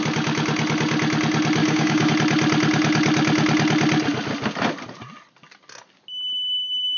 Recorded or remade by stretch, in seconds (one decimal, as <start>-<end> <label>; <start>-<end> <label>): 0.0-1.6 recorded; 1.6-2.1 remade; 2.1-7.0 recorded